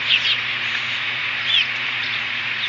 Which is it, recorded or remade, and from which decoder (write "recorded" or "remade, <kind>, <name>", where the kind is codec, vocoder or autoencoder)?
remade, vocoder, Vocos